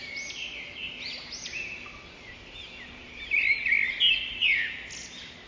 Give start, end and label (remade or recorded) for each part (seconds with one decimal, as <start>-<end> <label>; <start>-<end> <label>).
0.0-5.5 recorded